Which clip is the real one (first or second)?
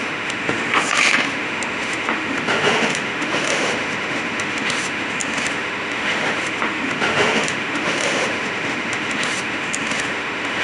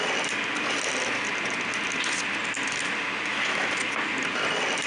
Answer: second